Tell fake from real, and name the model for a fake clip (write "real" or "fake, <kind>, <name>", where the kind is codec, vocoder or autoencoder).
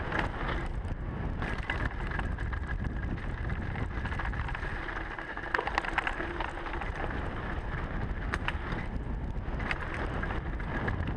real